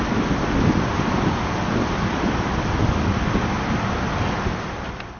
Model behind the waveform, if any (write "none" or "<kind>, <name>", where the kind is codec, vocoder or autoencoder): none